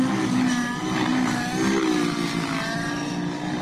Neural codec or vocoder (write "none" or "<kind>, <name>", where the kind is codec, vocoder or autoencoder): none